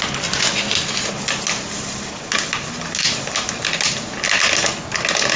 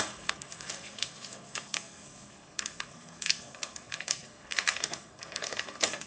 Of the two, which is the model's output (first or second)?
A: second